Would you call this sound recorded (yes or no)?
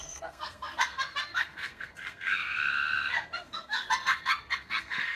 no